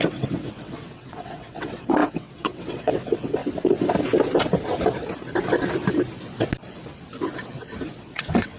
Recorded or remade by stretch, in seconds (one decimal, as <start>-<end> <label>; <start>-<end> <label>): 0.0-3.4 remade; 3.4-8.0 recorded; 8.0-8.6 remade